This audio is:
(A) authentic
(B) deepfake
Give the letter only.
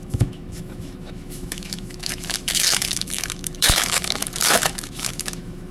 B